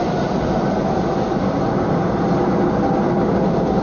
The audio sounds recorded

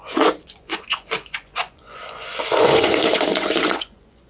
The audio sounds remade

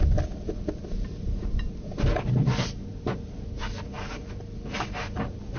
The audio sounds recorded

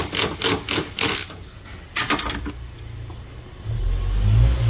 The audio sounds recorded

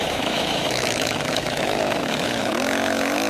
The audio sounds remade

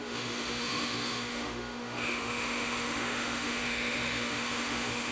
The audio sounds remade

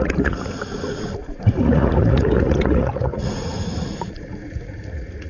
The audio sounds remade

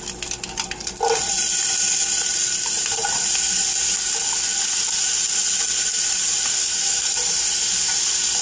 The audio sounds recorded